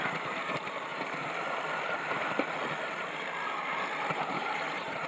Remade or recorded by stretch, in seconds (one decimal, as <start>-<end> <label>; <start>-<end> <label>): 0.0-0.9 remade; 0.9-4.0 recorded; 4.0-5.1 remade